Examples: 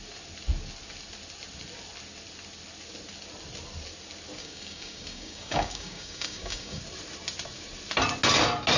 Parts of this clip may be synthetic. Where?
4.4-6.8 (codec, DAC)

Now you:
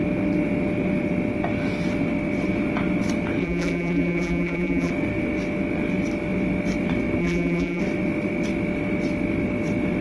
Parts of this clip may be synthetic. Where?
3.4-4.9 (vocoder, BigVGAN v2); 7.2-7.8

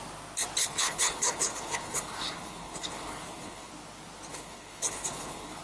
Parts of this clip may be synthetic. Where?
0.6-3.7 (codec, HILCodec); 4.3-5.6

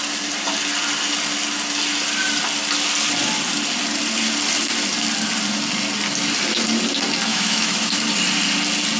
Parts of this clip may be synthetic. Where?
7.3-8.0 (autoencoder, DAC-VAE)

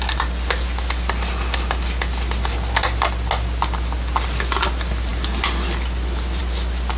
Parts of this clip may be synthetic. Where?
none

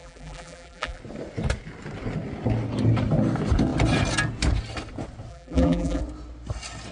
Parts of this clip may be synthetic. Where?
0.0-1.0 (vocoder, BigVGAN v2); 5.3-6.0

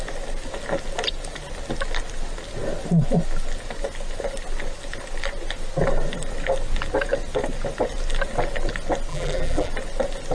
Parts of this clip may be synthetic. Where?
9.1-9.7 (vocoder, BigVGAN v2)